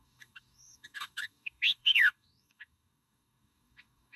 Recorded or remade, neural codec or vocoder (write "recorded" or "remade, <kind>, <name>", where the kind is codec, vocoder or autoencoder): remade, codec, DAC